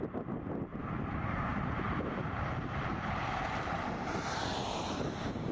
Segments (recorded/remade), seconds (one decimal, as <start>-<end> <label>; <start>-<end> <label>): 0.0-1.5 recorded; 1.5-4.8 remade; 4.8-5.5 recorded